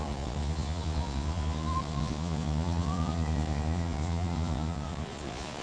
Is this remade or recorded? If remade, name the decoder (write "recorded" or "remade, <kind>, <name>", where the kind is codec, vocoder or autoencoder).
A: remade, vocoder, Vocos